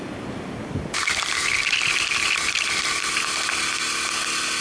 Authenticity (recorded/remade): recorded